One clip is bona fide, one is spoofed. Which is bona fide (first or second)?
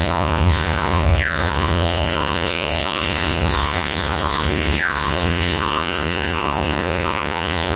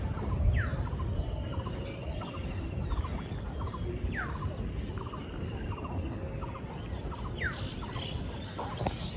second